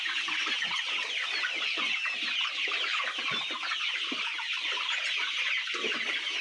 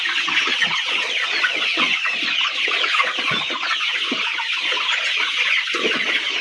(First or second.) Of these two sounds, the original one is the first